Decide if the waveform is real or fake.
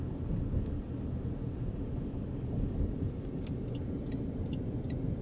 real